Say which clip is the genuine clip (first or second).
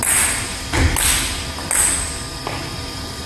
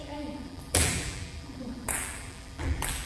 first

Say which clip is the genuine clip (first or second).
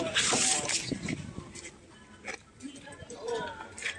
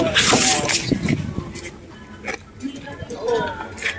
second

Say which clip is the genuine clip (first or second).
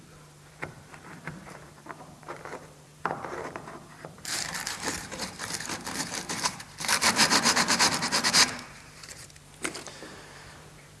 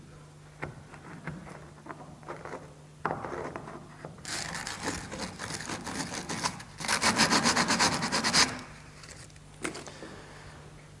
second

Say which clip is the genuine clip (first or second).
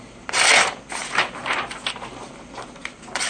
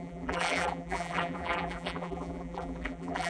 first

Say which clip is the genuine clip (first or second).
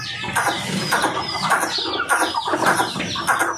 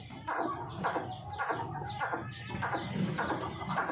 second